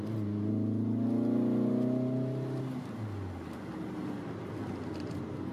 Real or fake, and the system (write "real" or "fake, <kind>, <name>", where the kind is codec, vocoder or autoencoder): real